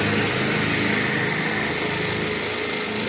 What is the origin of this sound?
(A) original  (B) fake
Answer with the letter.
A